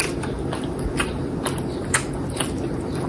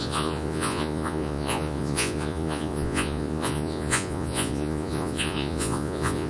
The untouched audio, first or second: first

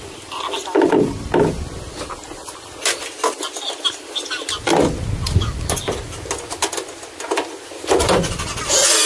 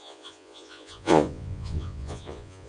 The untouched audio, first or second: first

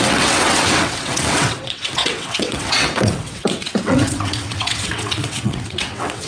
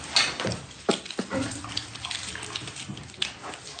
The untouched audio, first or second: second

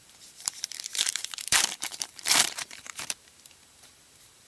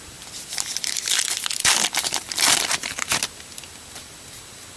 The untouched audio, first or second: second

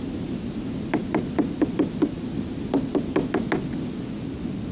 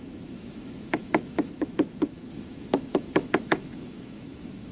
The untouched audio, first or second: first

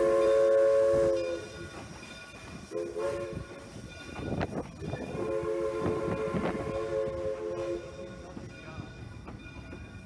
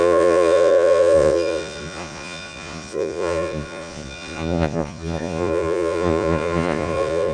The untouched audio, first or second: first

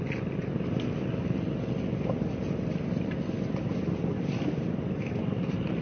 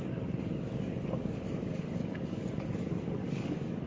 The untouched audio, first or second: first